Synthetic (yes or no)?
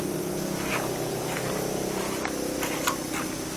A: no